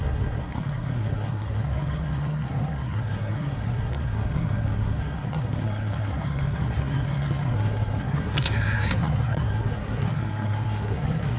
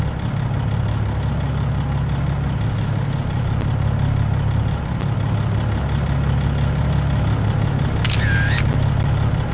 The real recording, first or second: second